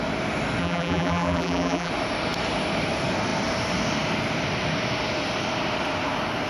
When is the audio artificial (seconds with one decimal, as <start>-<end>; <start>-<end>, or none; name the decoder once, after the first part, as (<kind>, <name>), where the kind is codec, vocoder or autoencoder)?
0.6-1.9 (vocoder, BigVGAN v2)

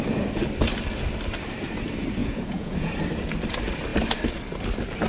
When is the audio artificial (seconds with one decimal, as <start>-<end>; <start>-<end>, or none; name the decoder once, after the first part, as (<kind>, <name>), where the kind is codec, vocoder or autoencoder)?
2.2-2.9 (vocoder, Vocos)

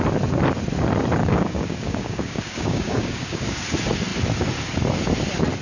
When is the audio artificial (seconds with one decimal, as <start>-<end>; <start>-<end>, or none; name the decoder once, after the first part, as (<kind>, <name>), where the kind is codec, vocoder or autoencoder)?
1.2-3.6 (codec, DAC)